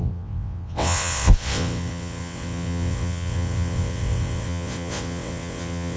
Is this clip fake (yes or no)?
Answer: yes